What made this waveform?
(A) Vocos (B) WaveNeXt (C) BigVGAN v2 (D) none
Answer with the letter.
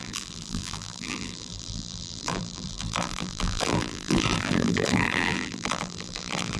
C